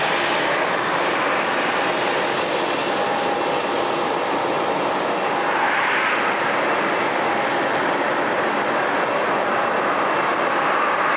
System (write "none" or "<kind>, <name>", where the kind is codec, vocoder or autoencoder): none